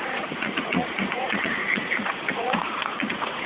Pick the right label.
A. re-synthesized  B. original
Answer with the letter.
A